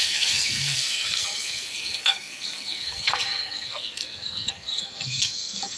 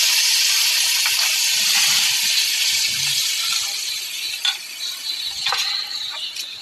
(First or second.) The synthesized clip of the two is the first